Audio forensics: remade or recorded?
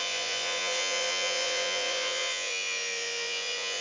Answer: remade